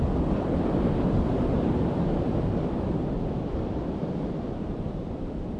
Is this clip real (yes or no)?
no